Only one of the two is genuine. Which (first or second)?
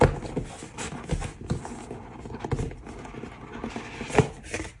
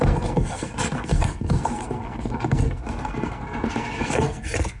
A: first